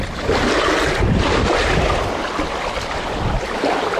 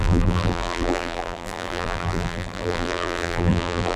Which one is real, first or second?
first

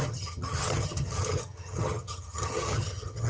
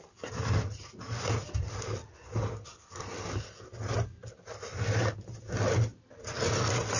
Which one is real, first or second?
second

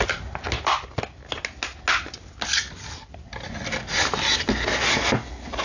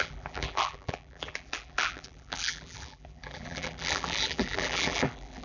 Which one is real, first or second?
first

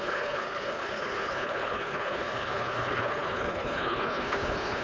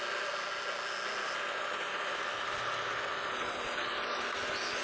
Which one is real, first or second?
second